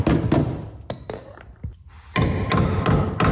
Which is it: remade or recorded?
recorded